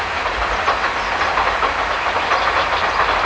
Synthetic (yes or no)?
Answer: no